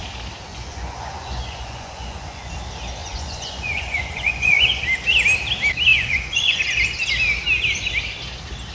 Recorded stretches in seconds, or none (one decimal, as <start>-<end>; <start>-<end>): 0.0-0.5; 2.5-3.0; 4.8-5.9; 6.6-8.7